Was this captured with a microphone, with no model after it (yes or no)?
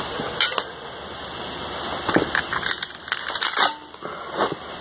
yes